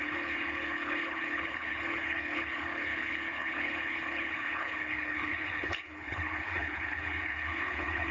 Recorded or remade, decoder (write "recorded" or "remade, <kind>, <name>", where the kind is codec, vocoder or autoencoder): remade, codec, HILCodec